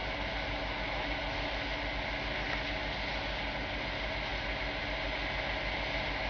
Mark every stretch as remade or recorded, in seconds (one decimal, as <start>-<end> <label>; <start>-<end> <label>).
0.0-6.3 recorded